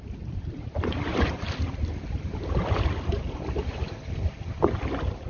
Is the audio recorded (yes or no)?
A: yes